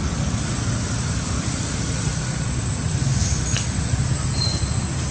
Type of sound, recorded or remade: recorded